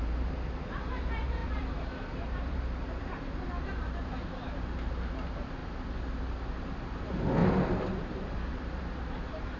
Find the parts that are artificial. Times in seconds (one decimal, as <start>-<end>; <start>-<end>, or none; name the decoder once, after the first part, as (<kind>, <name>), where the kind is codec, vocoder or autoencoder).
0.0-5.6 (vocoder, BigVGAN v2); 6.6-7.4; 8.1-9.6